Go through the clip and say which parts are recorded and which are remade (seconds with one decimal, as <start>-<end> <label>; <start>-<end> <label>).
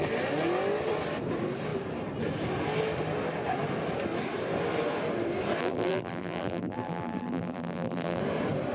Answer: 0.0-5.6 recorded; 5.6-8.2 remade; 8.2-8.7 recorded